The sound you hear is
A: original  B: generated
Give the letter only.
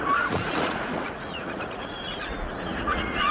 B